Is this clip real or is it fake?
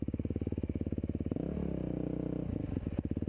real